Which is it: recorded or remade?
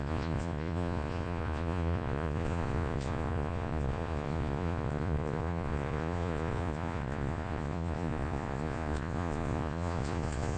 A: remade